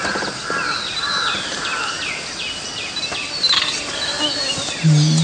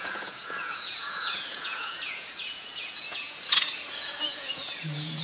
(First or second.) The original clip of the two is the first